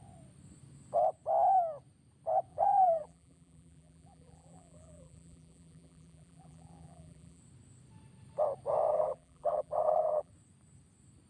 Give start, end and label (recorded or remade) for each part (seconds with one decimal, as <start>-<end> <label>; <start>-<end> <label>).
0.0-2.5 recorded; 2.5-7.4 remade; 7.4-8.9 recorded; 8.9-10.3 remade; 10.3-11.3 recorded